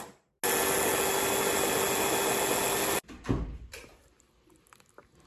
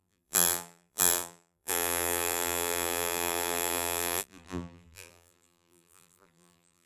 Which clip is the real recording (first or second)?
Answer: first